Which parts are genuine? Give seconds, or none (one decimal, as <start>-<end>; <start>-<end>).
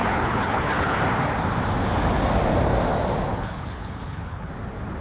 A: 1.0-3.3; 4.5-5.0